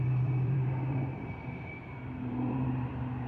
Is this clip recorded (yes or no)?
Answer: no